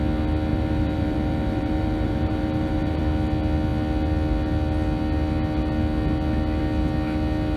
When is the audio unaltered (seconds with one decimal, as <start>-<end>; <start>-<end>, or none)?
0.0-0.5; 3.0-7.6